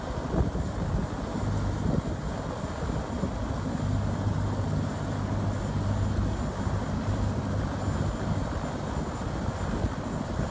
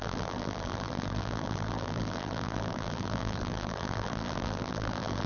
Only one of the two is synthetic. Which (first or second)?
second